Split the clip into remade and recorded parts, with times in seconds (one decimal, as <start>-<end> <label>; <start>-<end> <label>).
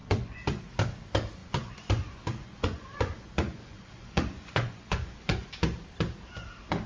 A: 0.0-0.6 remade; 0.6-1.4 recorded; 1.4-5.5 remade; 5.5-6.9 recorded